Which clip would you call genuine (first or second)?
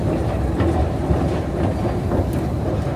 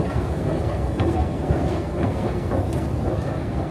first